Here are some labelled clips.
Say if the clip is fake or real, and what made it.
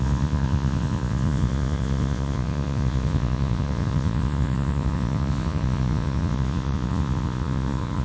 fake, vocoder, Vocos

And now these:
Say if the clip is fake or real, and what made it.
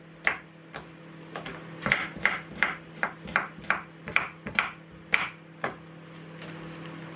real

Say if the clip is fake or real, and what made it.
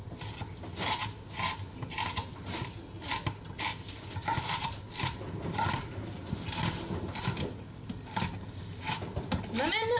real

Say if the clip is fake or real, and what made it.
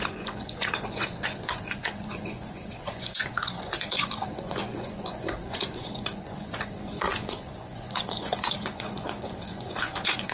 fake, vocoder, Vocos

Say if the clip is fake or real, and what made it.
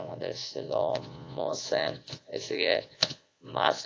fake, vocoder, Vocos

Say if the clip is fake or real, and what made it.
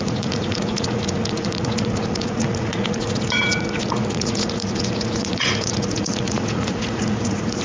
fake, vocoder, Vocos